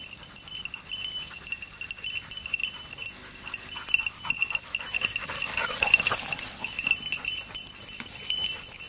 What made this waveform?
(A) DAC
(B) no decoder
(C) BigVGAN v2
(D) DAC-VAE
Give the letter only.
B